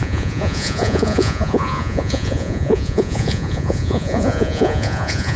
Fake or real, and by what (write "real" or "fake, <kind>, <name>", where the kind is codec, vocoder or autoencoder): fake, vocoder, Vocos